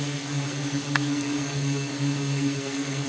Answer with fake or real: fake